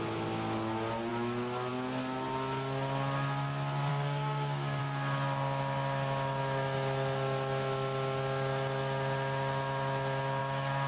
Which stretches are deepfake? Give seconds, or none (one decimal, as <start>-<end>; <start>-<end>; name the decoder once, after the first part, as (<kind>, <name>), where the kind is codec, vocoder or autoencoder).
3.9-4.8 (codec, DAC)